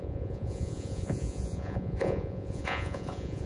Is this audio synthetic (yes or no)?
yes